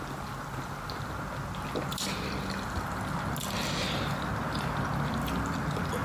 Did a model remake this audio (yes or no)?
no